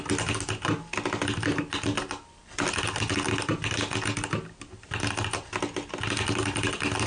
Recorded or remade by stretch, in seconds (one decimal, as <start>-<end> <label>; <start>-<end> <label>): 0.0-7.1 recorded